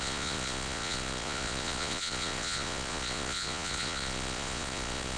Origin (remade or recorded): remade